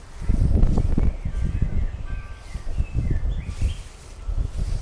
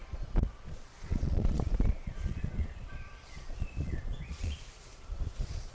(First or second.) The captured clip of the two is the first